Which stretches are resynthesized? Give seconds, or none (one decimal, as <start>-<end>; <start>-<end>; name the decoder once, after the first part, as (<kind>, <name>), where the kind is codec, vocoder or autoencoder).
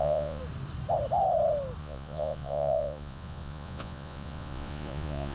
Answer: 0.0-0.4 (vocoder, Vocos); 1.8-5.3